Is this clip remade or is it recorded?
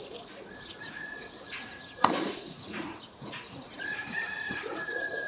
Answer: remade